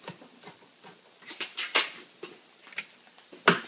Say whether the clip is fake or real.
real